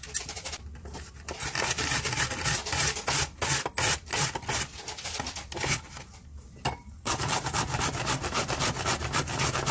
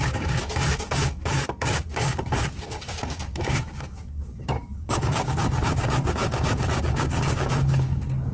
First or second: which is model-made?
second